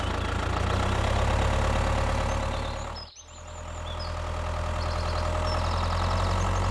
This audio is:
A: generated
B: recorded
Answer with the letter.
B